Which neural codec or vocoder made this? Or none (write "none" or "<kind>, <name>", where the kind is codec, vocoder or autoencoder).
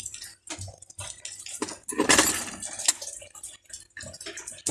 none